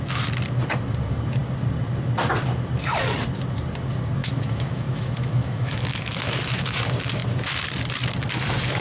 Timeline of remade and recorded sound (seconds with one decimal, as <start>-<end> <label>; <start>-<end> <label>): 0.0-4.2 recorded; 4.2-6.8 remade; 6.8-8.8 recorded